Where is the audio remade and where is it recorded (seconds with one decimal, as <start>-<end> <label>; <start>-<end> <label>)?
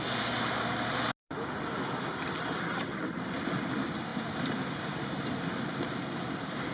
0.0-1.2 recorded; 1.2-2.0 remade; 2.0-4.1 recorded; 4.1-5.4 remade; 5.4-6.7 recorded